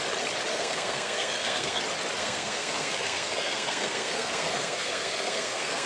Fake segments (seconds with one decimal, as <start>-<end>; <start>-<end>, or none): 0.5-1.8; 2.2-5.9